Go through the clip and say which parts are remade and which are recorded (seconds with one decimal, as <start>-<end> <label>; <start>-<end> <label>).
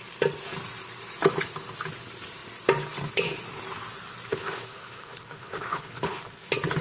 0.0-4.3 recorded; 4.3-6.2 remade; 6.2-6.8 recorded